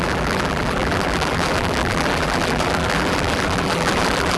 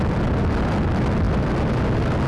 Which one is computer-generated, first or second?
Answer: first